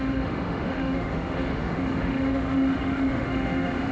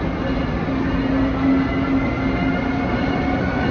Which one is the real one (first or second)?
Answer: second